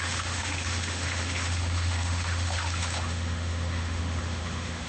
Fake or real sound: fake